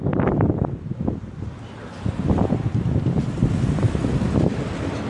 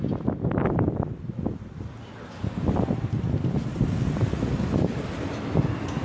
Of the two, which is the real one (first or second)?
second